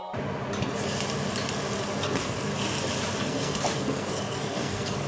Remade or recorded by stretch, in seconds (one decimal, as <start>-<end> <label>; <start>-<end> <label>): 0.0-2.0 recorded; 2.0-2.5 remade; 2.5-3.2 recorded; 3.2-5.1 remade